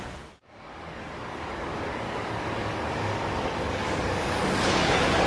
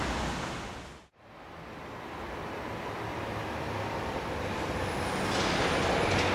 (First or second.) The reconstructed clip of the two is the first